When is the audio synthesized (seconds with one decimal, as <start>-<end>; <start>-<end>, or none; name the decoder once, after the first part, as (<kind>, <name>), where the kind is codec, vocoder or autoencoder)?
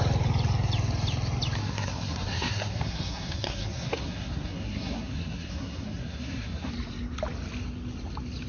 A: 1.6-6.7 (codec, SNAC)